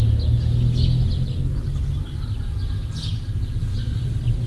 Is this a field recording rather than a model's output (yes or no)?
yes